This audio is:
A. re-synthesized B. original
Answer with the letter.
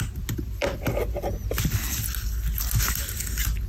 B